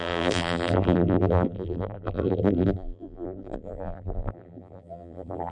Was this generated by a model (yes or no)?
yes